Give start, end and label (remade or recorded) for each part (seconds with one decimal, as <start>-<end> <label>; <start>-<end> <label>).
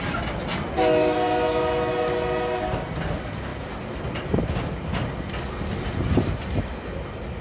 0.0-7.4 recorded